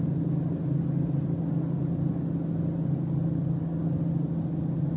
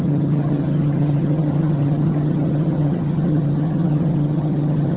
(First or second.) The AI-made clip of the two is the second